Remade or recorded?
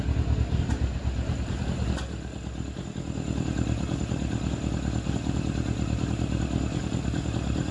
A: recorded